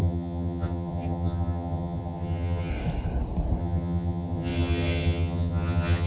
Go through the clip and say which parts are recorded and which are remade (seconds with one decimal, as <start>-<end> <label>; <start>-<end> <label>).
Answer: 0.0-2.7 remade; 2.7-3.6 recorded; 3.6-6.1 remade